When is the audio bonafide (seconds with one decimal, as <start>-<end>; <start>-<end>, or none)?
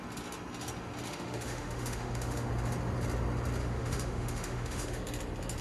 0.0-1.1; 2.5-3.6; 5.0-5.6